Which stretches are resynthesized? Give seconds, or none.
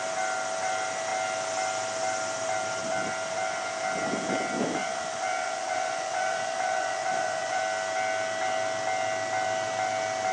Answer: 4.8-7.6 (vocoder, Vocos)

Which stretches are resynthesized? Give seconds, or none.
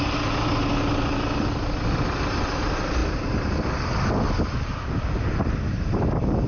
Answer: none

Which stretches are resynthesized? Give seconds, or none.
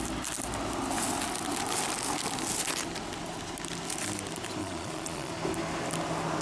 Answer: 4.6-5.3 (vocoder, Vocos)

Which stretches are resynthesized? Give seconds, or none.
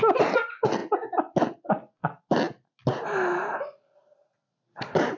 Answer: none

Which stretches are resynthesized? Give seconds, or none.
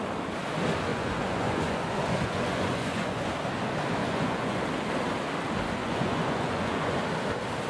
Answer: 0.9-3.3 (vocoder, Vocos); 4.0-4.6; 5.8-7.0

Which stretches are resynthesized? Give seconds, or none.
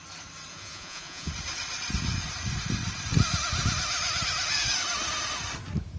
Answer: 0.5-1.3 (vocoder, Vocos)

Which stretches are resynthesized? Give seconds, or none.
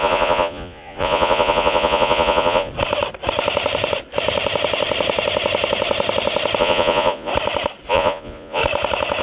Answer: 0.0-2.7 (vocoder, Vocos); 6.6-7.3; 7.9-8.6